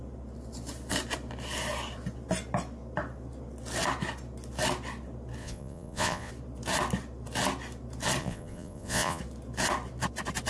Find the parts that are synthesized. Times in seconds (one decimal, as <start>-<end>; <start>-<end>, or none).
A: 5.4-6.3; 8.2-9.2